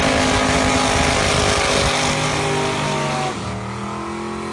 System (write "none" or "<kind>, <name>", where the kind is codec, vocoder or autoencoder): none